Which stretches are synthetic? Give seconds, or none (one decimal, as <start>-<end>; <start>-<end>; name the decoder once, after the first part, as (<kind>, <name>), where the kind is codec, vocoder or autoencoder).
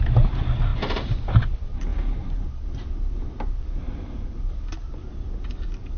none